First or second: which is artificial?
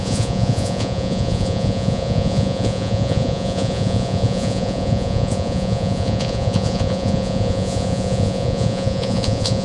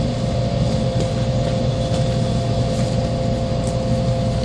first